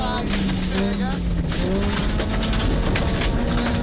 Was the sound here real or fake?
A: real